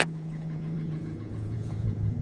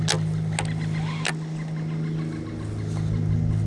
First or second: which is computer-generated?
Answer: first